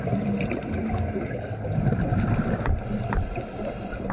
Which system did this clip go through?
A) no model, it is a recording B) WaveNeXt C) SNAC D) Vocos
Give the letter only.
A